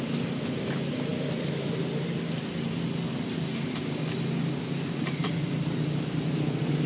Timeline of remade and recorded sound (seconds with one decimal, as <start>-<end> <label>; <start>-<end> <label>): 0.0-6.9 recorded